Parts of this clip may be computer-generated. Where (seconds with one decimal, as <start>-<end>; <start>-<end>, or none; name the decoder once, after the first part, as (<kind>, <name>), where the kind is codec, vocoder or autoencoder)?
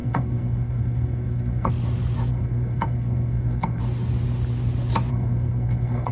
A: 0.0-1.7 (codec, SNAC); 2.3-3.8; 5.1-6.1